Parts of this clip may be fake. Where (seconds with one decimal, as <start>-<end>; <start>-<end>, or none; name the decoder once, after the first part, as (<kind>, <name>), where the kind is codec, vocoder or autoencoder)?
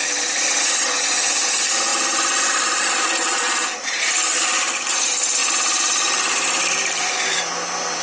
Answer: 0.0-0.7 (vocoder, BigVGAN v2); 1.9-4.0; 5.4-7.5